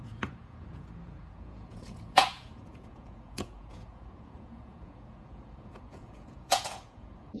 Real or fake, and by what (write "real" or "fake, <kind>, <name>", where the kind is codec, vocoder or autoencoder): fake, vocoder, Vocos